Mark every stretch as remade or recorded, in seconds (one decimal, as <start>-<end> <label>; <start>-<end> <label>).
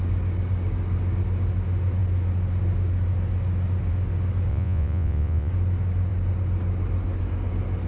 0.0-4.5 recorded; 4.5-5.5 remade; 5.5-7.9 recorded